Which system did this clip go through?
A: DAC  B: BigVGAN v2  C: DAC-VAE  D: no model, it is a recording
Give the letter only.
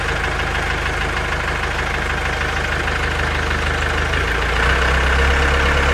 D